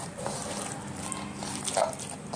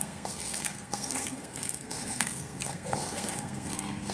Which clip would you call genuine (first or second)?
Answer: first